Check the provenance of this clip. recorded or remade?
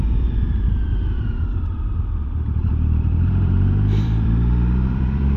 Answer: remade